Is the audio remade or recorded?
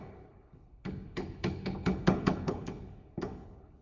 remade